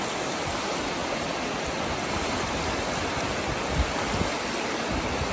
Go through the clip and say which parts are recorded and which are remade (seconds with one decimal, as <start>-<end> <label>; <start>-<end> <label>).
0.0-5.3 recorded

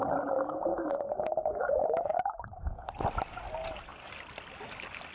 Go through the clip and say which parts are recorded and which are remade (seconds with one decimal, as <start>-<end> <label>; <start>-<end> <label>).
0.0-0.7 recorded; 0.7-2.9 remade; 2.9-5.1 recorded